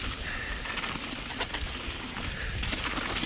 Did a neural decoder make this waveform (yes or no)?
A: no